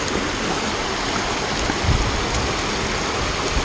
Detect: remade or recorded recorded